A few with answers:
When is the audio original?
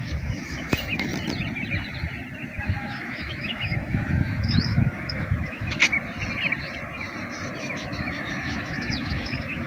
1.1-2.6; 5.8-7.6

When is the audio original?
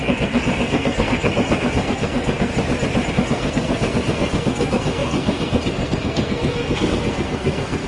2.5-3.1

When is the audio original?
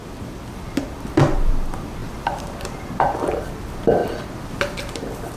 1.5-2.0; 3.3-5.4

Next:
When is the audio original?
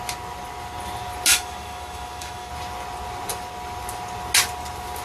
0.0-1.3; 2.5-5.0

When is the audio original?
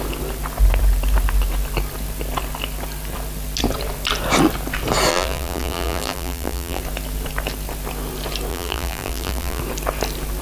0.0-5.1; 6.8-8.5; 9.6-10.4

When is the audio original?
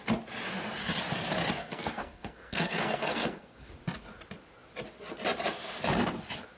0.0-1.6; 3.7-6.6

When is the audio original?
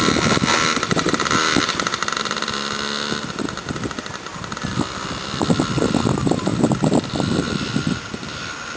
0.0-8.8